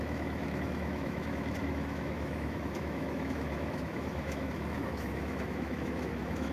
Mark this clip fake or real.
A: fake